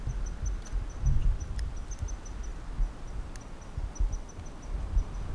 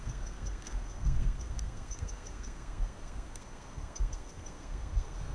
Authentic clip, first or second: first